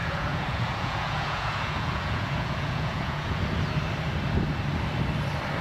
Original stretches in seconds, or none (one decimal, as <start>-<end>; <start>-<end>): 3.4-5.6